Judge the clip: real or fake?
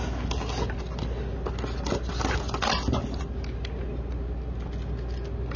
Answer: real